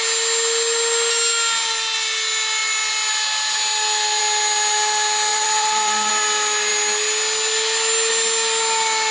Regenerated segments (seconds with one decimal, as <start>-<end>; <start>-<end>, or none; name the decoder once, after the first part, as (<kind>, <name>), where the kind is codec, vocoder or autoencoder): 5.3-6.1 (vocoder, BigVGAN v2)